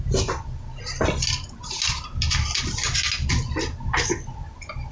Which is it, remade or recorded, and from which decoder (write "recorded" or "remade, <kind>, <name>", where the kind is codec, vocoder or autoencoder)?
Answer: recorded